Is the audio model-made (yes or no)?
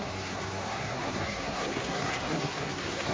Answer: yes